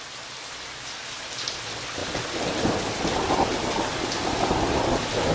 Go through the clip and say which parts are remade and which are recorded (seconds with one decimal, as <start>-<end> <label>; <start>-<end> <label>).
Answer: 0.0-5.3 recorded